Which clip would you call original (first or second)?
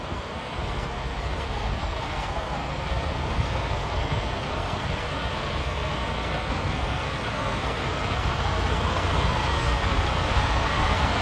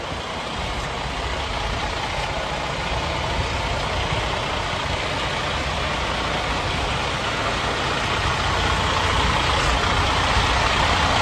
second